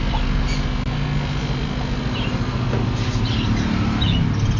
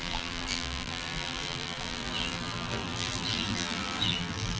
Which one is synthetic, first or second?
second